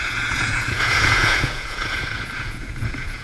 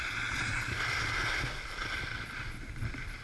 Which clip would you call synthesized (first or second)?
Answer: first